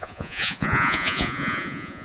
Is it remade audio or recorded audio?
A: remade